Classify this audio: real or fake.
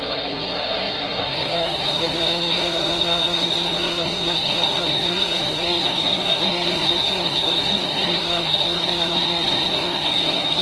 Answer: fake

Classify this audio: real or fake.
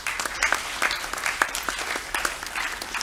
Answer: fake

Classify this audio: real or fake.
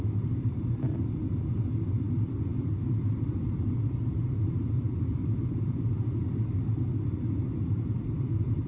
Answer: fake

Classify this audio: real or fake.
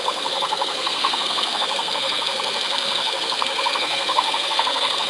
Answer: fake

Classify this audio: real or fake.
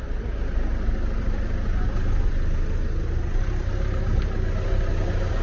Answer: real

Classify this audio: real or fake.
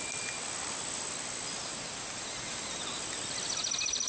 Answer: real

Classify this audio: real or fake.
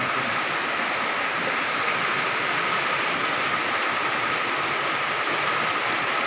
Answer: real